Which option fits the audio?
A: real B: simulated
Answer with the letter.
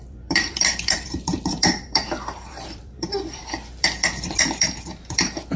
B